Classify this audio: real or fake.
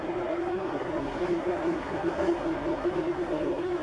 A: fake